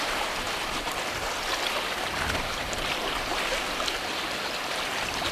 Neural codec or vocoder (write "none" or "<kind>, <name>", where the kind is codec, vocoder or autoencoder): none